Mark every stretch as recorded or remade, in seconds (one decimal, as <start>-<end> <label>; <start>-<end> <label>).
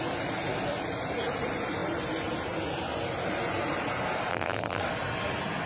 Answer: 0.0-4.3 recorded; 4.3-4.8 remade; 4.8-5.7 recorded